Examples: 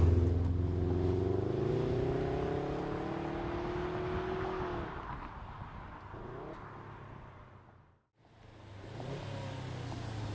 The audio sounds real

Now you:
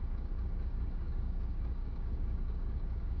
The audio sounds fake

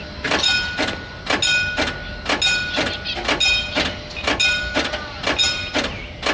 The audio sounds real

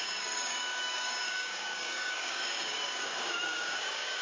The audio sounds fake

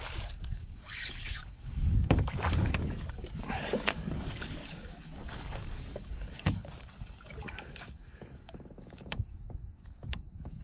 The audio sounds fake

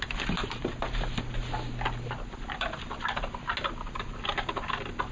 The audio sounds real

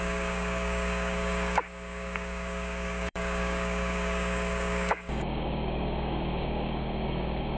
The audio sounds fake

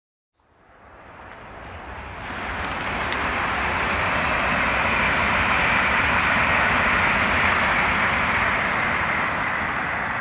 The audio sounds real